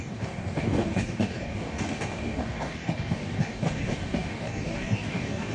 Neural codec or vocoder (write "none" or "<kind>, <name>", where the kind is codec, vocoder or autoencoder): codec, DAC